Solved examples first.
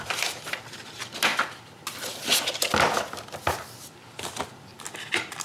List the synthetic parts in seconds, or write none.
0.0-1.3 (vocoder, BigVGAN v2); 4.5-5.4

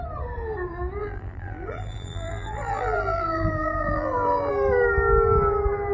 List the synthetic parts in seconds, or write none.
1.0-4.5 (vocoder, BigVGAN v2)

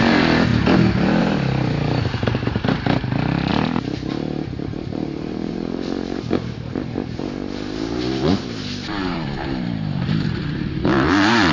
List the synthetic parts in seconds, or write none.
0.0-0.5 (vocoder, BigVGAN v2); 1.2-11.5

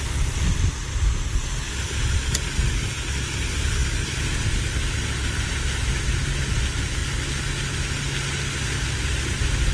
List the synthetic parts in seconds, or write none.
none

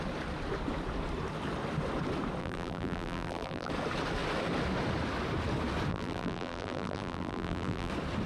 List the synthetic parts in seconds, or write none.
2.4-3.7 (vocoder, BigVGAN v2); 5.9-7.9

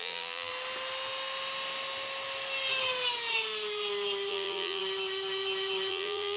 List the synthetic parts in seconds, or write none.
0.0-0.5 (vocoder, BigVGAN v2); 4.3-4.8; 5.9-6.4

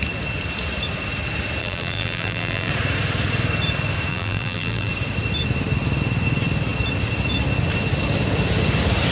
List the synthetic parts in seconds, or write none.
1.6-2.7 (vocoder, BigVGAN v2); 4.1-4.9